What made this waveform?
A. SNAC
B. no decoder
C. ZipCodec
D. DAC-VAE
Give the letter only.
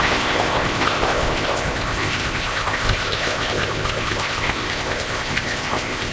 C